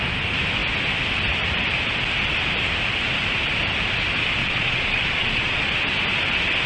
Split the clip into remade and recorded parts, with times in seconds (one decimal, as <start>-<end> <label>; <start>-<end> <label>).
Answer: 0.0-4.4 recorded; 4.4-5.6 remade; 5.6-6.7 recorded